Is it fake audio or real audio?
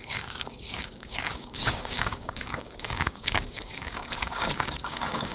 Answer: fake